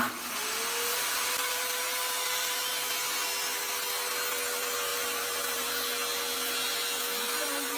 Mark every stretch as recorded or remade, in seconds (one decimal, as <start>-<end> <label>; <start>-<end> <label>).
0.0-0.9 recorded; 0.9-2.7 remade; 2.7-4.9 recorded; 4.9-5.7 remade; 5.7-7.8 recorded